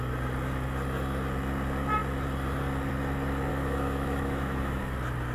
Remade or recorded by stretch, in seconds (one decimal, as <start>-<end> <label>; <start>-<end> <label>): 0.0-3.5 recorded; 3.5-4.8 remade; 4.8-5.3 recorded